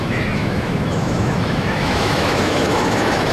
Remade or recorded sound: remade